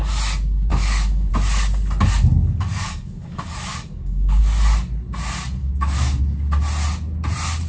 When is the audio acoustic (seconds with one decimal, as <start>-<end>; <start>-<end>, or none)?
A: 0.0-0.7; 1.3-2.4; 4.4-5.6; 6.2-7.7